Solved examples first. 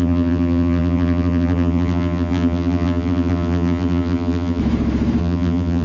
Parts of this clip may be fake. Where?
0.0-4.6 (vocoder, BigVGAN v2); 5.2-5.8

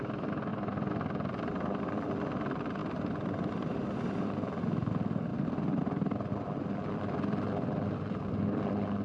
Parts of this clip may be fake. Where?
0.0-0.5 (vocoder, BigVGAN v2); 1.8-9.0

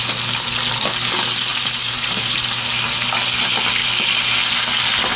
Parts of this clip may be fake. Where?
1.5-2.4 (vocoder, BigVGAN v2)